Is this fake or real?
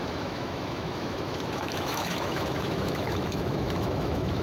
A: fake